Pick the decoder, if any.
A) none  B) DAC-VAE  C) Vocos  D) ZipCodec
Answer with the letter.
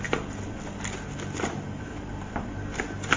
A